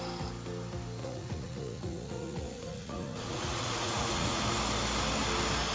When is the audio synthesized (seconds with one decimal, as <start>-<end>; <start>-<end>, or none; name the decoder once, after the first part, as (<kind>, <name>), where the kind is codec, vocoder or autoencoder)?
1.0-4.4 (vocoder, Vocos)